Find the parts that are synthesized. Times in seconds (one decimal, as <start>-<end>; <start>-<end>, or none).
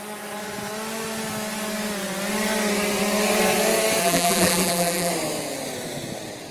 4.0-5.1